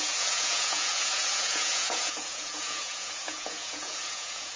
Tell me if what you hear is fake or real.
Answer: fake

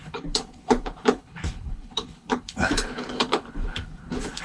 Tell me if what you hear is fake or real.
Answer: fake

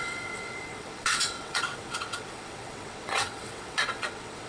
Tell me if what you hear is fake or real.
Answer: fake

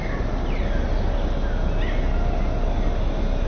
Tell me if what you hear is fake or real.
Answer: real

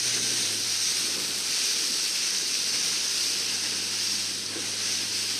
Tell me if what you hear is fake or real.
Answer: fake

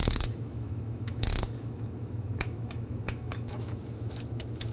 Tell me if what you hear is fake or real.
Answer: fake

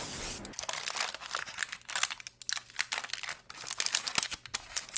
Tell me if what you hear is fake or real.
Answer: real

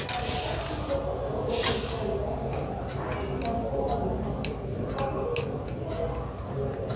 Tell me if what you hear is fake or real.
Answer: real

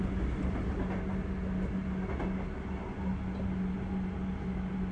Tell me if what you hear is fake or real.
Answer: real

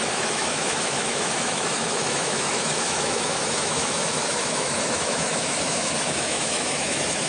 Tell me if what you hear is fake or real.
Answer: fake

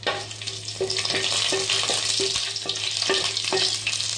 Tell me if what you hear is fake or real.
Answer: real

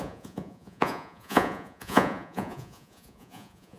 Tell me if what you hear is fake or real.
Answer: fake